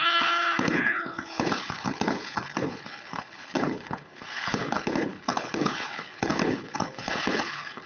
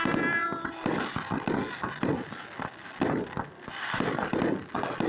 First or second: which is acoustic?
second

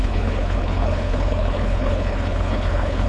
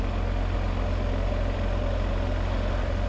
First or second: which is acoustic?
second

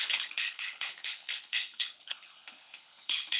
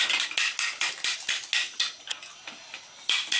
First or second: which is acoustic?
second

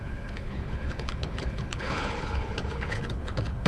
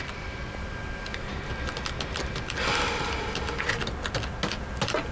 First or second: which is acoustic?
second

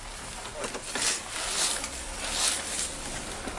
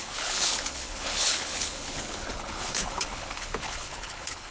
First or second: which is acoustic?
first